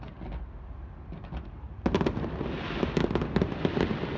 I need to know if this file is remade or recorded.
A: recorded